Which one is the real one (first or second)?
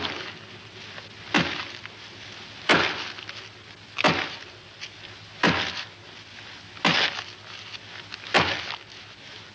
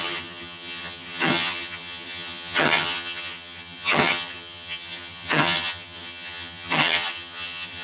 first